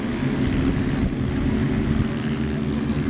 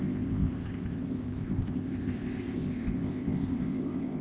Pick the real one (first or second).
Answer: first